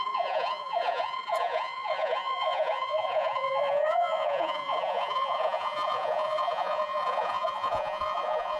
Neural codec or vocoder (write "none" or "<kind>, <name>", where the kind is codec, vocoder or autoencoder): vocoder, Vocos